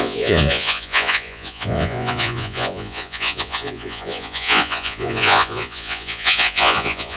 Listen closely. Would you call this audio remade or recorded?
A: remade